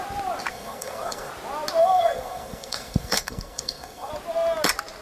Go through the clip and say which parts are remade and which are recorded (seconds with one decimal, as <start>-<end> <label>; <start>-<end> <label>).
0.0-0.5 recorded; 0.5-1.3 remade; 1.3-1.8 recorded; 1.8-4.1 remade; 4.1-5.0 recorded